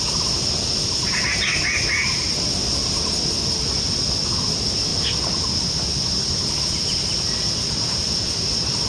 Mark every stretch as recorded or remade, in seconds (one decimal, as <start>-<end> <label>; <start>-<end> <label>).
0.0-2.6 recorded; 2.6-3.3 remade; 3.3-8.9 recorded

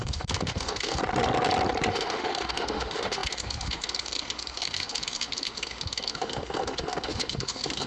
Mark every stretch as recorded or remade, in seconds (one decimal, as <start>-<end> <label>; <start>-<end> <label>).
0.0-1.0 remade; 1.0-1.9 recorded; 1.9-7.9 remade

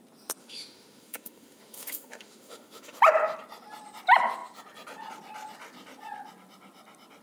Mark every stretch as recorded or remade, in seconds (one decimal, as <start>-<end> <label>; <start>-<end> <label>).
0.0-0.4 recorded; 0.4-3.0 remade; 3.0-7.2 recorded

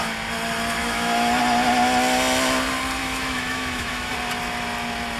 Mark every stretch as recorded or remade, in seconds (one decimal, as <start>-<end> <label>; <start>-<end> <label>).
0.0-0.8 recorded; 0.8-1.4 remade; 1.4-3.0 recorded; 3.0-4.1 remade; 4.1-5.2 recorded